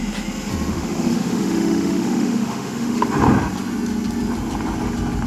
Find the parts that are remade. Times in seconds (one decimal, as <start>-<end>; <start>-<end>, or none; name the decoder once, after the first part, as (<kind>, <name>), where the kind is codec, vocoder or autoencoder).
0.7-3.1 (autoencoder, DAC-VAE)